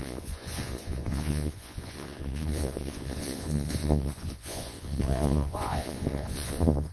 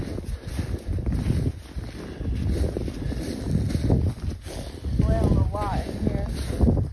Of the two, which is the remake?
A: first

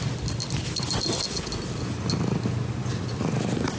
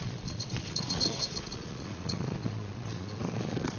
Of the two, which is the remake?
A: second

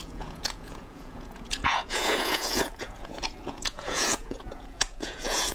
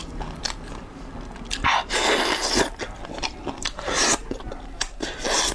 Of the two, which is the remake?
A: first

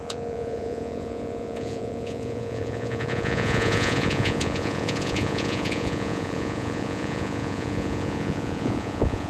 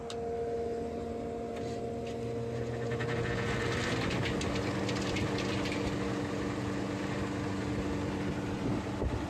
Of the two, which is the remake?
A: first